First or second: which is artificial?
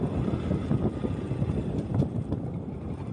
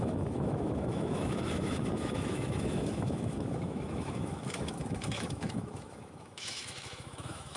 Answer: second